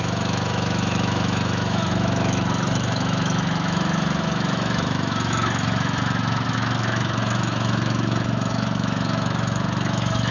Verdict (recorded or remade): remade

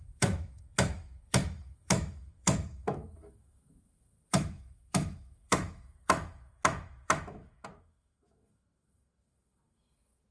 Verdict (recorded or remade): remade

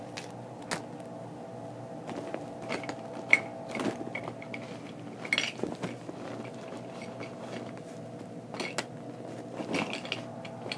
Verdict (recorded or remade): recorded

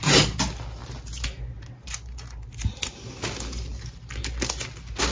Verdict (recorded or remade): recorded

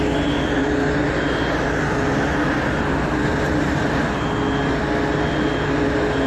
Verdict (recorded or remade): recorded